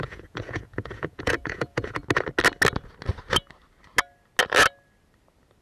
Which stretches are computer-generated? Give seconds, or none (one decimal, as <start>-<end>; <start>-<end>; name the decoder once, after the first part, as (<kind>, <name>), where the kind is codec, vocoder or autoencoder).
0.0-2.0 (vocoder, Vocos)